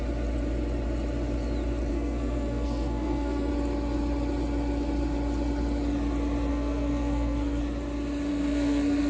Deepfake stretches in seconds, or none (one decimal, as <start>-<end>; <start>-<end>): 1.9-3.5; 6.5-7.6; 8.3-9.1